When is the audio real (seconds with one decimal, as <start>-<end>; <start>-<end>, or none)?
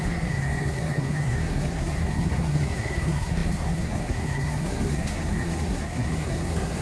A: none